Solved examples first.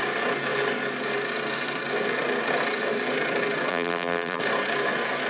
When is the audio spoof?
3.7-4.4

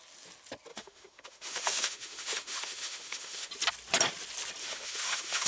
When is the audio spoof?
0.7-3.5; 4.6-5.5

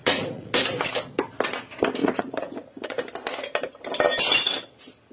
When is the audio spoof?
0.0-0.5; 2.0-3.0

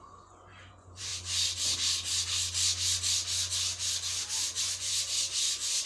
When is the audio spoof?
0.0-1.1; 4.6-5.9

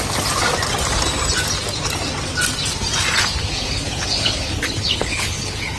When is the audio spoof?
3.4-5.8